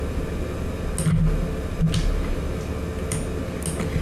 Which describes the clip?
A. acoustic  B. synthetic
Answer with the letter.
A